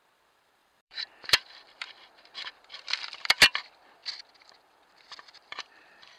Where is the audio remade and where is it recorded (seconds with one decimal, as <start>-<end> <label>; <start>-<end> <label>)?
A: 0.0-0.6 recorded; 0.6-3.4 remade; 3.4-4.0 recorded; 4.0-6.2 remade